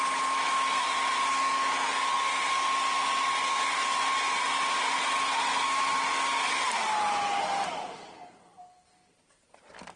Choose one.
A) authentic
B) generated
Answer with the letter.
A